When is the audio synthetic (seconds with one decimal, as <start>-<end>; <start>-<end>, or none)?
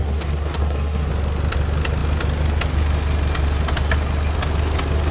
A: 0.0-1.1